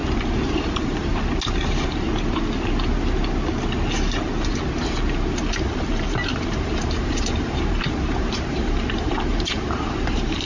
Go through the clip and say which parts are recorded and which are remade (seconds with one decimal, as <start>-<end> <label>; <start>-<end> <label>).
0.0-0.5 recorded; 0.5-1.1 remade; 1.1-5.4 recorded; 5.4-10.5 remade